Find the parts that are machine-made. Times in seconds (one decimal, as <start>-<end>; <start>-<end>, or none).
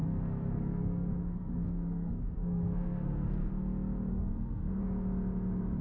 0.0-3.5; 4.1-4.8